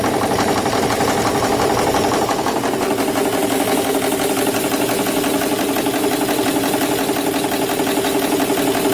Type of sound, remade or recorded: recorded